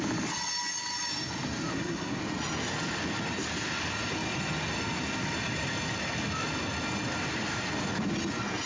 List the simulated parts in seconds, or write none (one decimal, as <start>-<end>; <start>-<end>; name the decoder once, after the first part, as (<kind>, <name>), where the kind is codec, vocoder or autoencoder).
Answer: 1.7-2.2 (codec, SNAC)